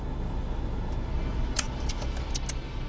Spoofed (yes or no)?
no